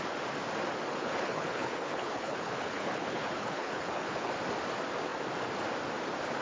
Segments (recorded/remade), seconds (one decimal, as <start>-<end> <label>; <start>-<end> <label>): 0.0-0.9 recorded; 0.9-4.3 remade; 4.3-6.4 recorded